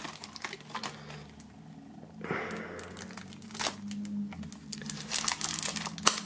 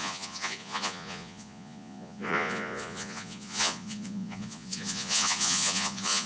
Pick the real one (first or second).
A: first